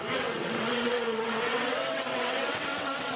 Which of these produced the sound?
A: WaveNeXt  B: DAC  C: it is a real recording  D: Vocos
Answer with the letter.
A